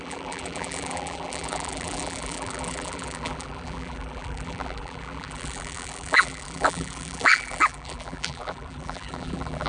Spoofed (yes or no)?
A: yes